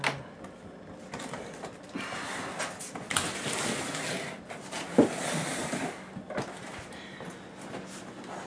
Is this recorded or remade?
recorded